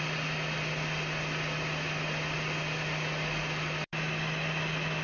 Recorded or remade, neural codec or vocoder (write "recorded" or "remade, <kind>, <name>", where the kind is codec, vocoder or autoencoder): recorded